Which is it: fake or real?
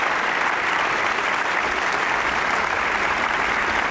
real